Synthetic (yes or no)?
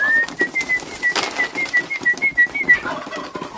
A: no